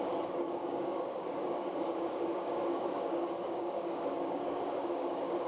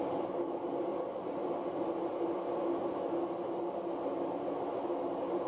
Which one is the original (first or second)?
second